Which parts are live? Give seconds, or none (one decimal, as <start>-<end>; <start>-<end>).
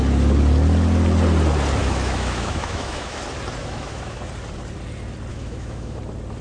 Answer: 0.0-1.8; 3.2-3.6; 4.2-5.3; 6.0-6.4